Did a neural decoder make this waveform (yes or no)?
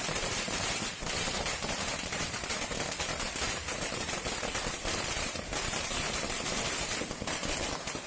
yes